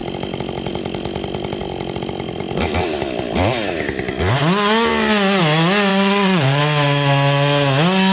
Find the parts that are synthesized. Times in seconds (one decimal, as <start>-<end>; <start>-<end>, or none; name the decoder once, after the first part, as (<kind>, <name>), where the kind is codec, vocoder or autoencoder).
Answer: 5.9-6.6 (vocoder, Vocos)